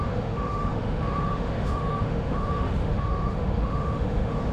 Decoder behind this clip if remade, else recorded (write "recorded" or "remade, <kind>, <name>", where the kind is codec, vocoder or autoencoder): remade, autoencoder, DAC-VAE